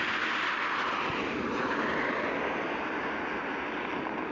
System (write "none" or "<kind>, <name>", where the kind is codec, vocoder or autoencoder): none